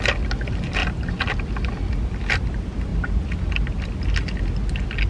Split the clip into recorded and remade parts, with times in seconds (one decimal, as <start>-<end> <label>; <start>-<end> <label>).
0.0-0.8 recorded; 0.8-1.9 remade; 1.9-5.1 recorded